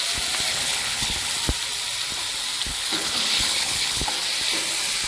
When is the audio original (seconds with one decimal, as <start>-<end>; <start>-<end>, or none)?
0.0-0.5; 1.3-2.7; 4.1-5.1